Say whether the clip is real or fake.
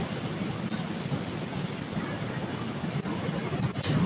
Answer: real